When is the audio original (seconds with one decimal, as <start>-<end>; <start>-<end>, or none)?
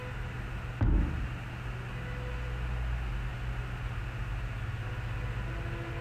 0.0-6.0